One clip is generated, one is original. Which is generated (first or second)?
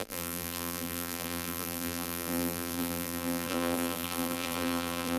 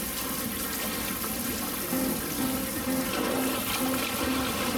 first